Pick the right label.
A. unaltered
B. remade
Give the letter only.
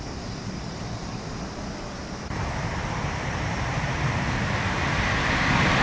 B